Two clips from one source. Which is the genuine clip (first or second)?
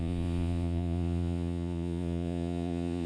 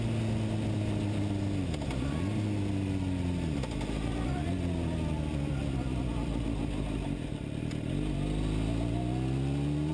second